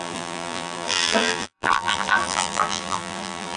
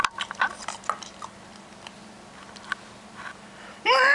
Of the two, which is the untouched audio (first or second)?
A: second